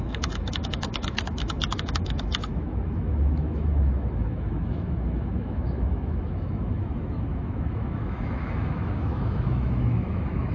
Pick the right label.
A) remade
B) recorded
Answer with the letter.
A